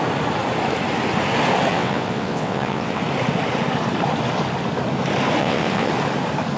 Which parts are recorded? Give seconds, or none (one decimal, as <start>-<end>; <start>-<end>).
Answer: 0.0-1.7; 3.0-5.4; 5.9-6.6